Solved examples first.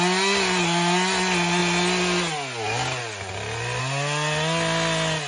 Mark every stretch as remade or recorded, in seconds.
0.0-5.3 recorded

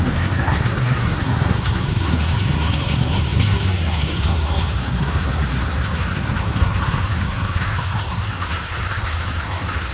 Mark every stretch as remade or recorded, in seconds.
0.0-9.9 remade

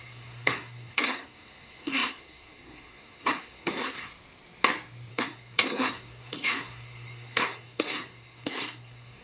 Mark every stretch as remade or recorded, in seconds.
0.0-4.1 remade; 4.1-5.1 recorded; 5.1-9.2 remade

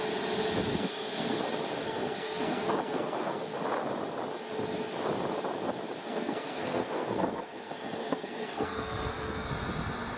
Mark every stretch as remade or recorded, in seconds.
0.0-0.7 recorded; 0.7-1.4 remade; 1.4-1.8 recorded; 1.8-3.6 remade; 3.6-6.0 recorded; 6.0-9.5 remade; 9.5-10.2 recorded